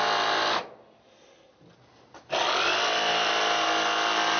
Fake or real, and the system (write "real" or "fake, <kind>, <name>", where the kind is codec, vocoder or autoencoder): real